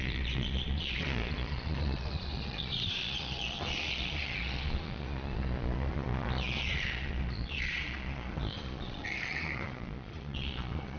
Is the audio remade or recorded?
remade